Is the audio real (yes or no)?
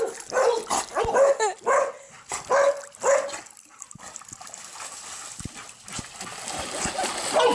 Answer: yes